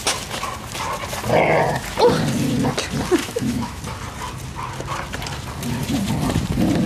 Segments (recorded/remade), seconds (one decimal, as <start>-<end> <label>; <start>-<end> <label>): 0.0-3.2 recorded; 3.2-3.8 remade; 3.8-6.9 recorded